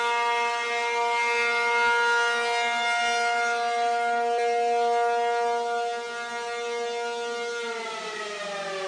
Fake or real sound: real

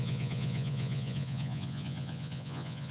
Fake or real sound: fake